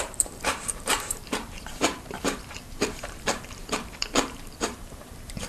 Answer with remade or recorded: remade